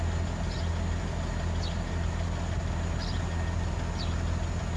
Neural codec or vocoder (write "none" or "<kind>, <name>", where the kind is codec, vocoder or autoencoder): none